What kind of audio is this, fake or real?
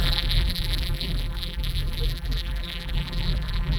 fake